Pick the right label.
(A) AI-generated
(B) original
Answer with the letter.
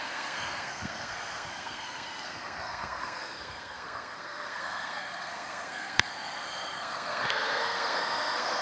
A